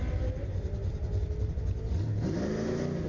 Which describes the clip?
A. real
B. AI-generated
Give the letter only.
A